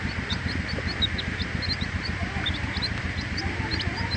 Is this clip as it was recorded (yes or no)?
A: yes